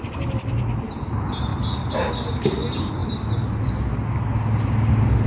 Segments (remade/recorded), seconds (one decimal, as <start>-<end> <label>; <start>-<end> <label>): 0.0-5.3 recorded